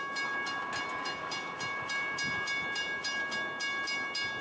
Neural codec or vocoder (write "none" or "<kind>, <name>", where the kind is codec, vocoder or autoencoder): none